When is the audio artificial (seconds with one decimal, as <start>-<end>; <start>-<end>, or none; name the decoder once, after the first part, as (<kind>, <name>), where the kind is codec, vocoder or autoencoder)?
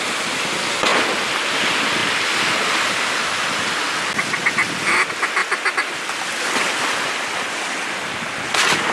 none